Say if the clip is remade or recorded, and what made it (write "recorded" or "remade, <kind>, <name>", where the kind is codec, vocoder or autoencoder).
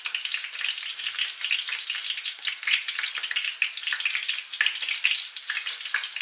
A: recorded